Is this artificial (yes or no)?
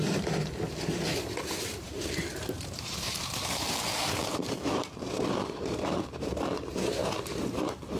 yes